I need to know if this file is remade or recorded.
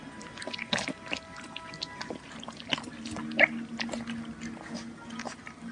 recorded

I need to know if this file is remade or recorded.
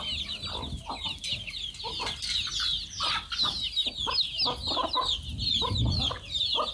recorded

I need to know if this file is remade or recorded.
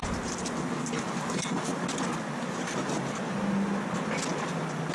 recorded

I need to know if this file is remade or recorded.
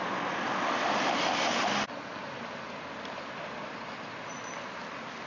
recorded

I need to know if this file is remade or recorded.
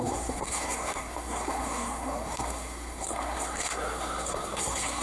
remade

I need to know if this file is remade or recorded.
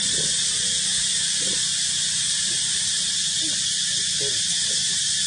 recorded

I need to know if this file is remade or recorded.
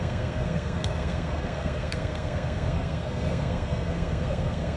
remade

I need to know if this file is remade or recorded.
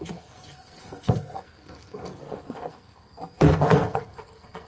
remade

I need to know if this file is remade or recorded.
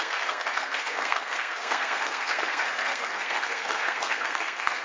remade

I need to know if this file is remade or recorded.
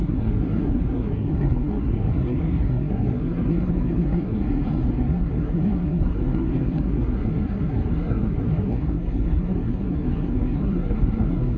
remade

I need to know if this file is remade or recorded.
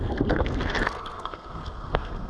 remade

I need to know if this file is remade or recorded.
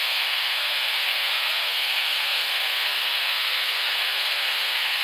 remade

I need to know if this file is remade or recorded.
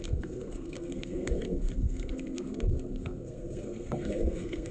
remade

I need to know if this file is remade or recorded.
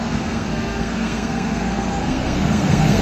remade